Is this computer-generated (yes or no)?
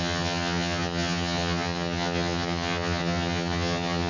yes